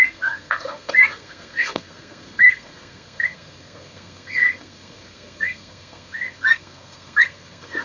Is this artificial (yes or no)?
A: yes